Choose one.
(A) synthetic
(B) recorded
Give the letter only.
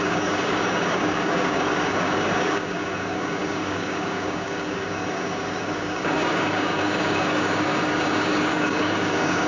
A